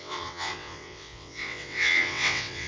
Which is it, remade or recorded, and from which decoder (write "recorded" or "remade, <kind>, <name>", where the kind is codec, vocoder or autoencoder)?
remade, vocoder, WaveNeXt